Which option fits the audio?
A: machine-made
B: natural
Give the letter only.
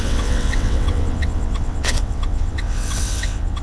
A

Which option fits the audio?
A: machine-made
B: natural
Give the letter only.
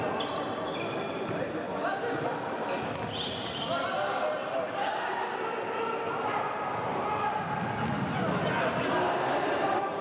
B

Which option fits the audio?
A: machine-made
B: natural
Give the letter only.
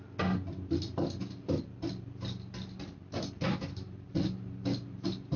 B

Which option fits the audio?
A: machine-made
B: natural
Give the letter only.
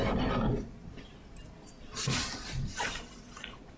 B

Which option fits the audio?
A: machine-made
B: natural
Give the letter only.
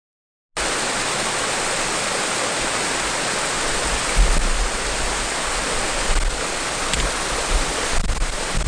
B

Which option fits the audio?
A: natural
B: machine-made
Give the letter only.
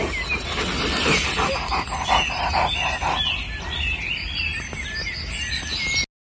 A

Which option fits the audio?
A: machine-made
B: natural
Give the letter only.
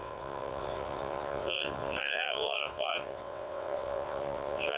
A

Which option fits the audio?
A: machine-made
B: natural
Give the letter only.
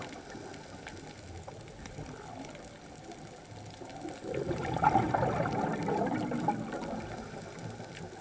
B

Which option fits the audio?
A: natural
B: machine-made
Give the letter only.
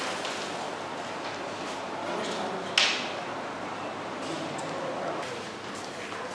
A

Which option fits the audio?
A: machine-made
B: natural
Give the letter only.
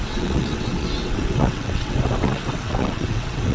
A